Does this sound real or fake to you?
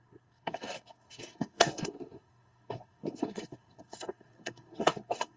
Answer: fake